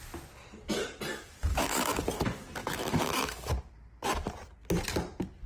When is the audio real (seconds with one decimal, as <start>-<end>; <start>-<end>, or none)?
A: 0.0-1.5; 2.0-2.6; 3.5-5.5